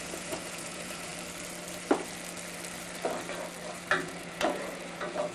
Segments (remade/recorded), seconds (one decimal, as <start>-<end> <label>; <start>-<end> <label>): 0.0-1.1 remade; 1.1-4.0 recorded; 4.0-5.3 remade